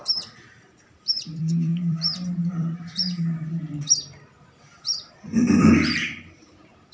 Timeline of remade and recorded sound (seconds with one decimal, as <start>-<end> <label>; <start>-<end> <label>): 0.0-0.7 recorded; 0.7-6.9 remade